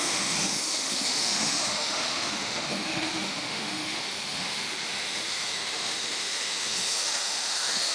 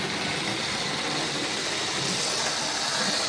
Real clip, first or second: second